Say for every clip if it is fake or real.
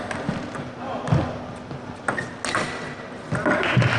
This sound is real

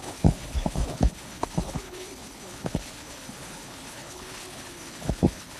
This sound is fake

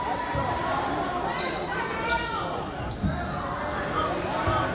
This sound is real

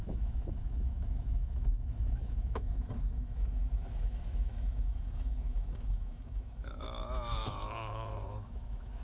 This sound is fake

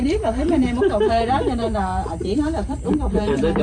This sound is fake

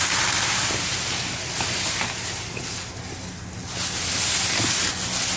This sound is real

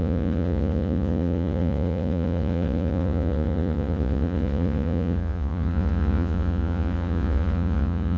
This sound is fake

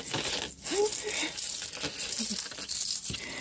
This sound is real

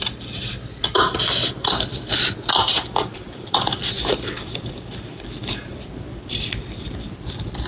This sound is real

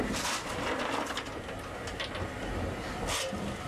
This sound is real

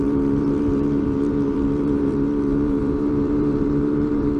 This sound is fake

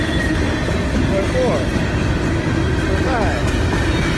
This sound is real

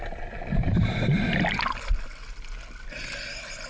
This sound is real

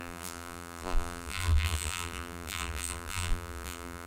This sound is fake